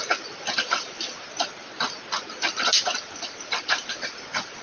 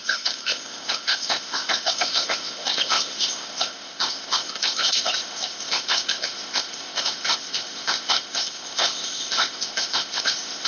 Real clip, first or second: first